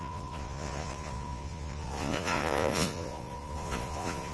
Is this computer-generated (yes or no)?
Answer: yes